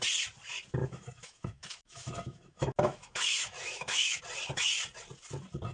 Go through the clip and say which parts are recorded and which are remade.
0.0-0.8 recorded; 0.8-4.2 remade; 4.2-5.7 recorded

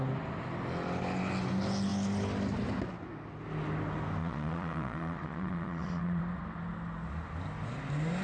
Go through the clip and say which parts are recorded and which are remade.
0.0-4.2 recorded; 4.2-6.2 remade; 6.2-8.2 recorded

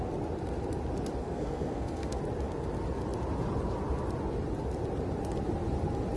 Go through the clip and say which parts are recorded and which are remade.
0.0-1.2 recorded; 1.2-2.2 remade; 2.2-6.2 recorded

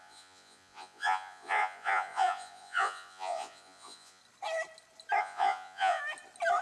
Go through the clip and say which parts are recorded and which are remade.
0.0-4.2 remade; 4.2-5.2 recorded; 5.2-6.0 remade; 6.0-6.6 recorded

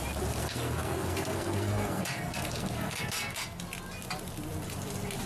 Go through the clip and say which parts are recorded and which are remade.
0.0-0.4 recorded; 0.4-3.6 remade; 3.6-5.3 recorded

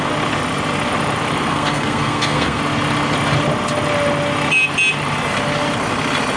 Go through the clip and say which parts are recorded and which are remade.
0.0-1.5 recorded; 1.5-2.6 remade; 2.6-6.4 recorded

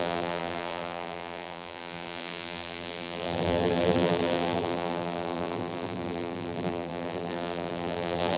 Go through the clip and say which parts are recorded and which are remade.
0.0-8.4 remade

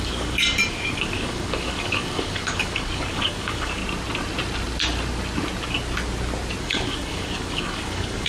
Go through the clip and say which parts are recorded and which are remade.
0.0-3.8 remade; 3.8-6.6 recorded; 6.6-8.3 remade